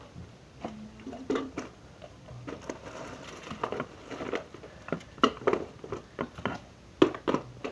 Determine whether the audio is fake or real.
real